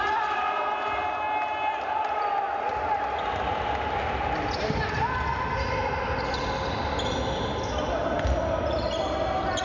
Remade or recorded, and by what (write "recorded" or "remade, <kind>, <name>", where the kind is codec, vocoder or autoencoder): recorded